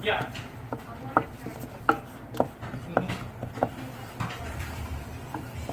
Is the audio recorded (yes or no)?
yes